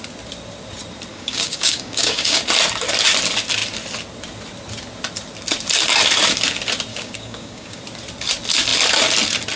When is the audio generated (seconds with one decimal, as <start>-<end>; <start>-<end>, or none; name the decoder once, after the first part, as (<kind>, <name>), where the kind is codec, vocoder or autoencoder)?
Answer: 1.1-2.4 (codec, DAC); 6.9-7.8